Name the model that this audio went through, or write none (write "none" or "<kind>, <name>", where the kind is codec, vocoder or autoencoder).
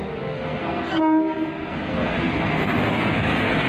codec, SNAC